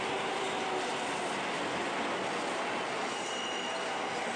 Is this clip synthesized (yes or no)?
no